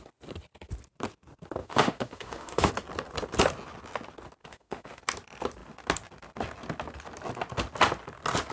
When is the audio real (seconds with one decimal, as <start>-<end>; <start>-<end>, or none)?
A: 0.0-1.6; 2.7-4.4; 5.0-8.5